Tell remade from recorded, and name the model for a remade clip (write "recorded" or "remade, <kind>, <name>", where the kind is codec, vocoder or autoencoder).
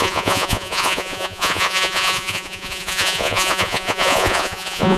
remade, vocoder, Vocos